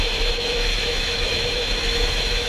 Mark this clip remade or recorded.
remade